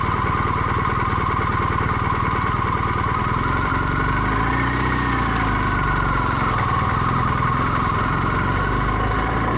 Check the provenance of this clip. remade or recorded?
recorded